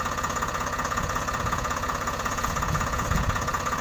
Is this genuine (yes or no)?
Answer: no